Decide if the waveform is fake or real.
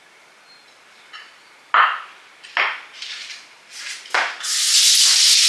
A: real